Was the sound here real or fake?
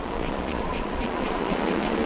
fake